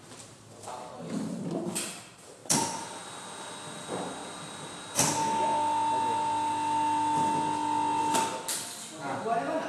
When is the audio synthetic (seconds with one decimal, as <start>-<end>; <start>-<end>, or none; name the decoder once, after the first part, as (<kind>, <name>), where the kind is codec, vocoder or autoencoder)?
none